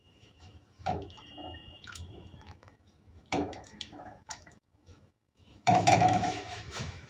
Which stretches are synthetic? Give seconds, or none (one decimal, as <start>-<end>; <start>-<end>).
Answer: 0.0-7.1